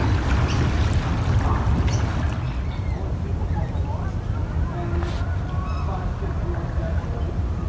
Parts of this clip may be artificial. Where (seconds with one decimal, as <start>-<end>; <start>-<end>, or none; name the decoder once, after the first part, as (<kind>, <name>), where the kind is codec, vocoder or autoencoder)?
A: none